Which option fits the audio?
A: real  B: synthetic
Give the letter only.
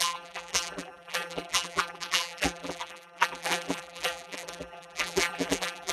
B